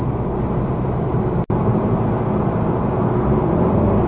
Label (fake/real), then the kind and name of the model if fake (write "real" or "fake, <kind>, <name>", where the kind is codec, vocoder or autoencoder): real